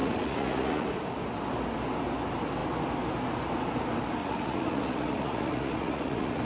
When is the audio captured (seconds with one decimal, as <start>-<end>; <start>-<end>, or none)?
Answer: 0.9-4.2